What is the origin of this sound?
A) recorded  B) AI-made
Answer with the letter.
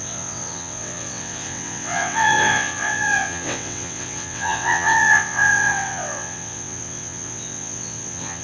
B